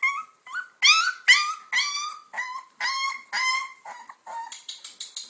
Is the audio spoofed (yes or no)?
no